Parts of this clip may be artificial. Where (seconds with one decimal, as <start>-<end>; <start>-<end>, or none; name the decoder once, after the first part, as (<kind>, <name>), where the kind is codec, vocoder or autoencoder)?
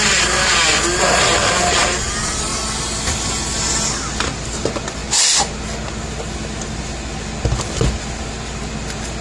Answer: none